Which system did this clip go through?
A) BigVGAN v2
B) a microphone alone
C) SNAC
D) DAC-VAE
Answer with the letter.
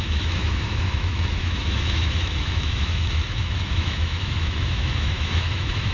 D